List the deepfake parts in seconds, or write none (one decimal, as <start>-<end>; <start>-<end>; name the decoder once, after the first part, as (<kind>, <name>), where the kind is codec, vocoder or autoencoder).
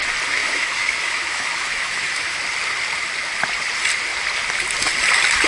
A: 0.4-2.4 (autoencoder, DAC-VAE)